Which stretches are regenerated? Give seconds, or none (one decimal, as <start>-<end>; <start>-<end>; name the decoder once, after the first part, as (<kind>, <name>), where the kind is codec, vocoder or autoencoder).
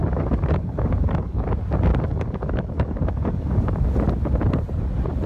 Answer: 0.0-1.5 (codec, DAC); 1.9-3.9